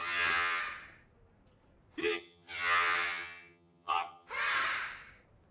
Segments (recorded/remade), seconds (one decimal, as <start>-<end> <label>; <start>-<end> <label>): 0.0-0.6 remade; 0.6-2.0 recorded; 2.0-4.3 remade; 4.3-5.5 recorded